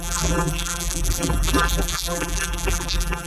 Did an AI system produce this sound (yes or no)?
yes